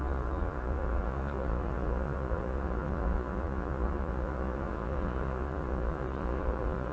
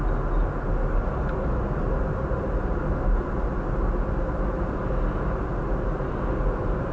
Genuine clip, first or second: second